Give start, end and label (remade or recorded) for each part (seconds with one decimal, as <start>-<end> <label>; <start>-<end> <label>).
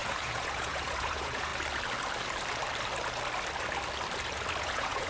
0.0-1.5 remade; 1.5-4.6 recorded; 4.6-5.1 remade